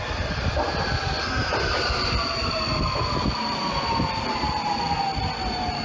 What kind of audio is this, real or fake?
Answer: real